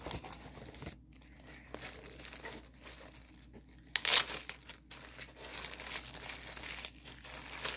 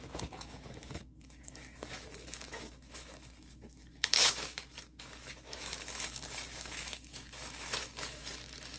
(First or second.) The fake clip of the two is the second